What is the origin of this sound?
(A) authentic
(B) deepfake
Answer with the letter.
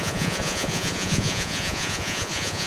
B